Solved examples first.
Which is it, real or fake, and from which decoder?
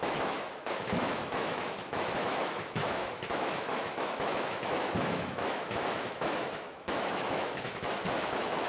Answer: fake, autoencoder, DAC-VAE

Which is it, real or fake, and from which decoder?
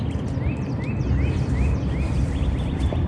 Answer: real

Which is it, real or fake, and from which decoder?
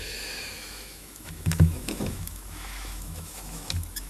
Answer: fake, autoencoder, DAC-VAE